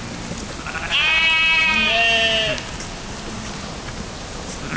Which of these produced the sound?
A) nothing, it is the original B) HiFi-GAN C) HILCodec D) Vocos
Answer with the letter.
A